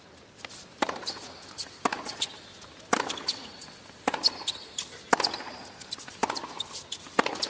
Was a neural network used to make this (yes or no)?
yes